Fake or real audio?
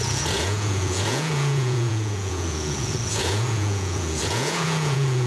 fake